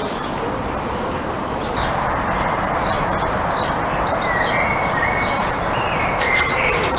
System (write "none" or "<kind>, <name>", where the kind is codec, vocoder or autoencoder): none